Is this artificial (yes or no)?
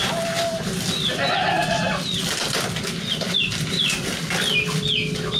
no